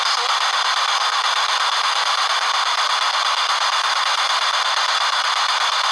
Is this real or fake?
real